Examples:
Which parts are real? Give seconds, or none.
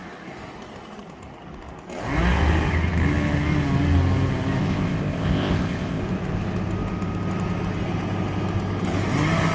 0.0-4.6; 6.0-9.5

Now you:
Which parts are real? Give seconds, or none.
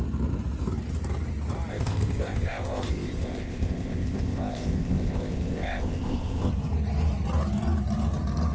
0.0-1.7; 6.5-8.5